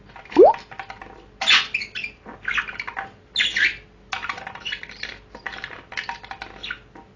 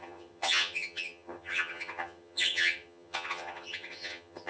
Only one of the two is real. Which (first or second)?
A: first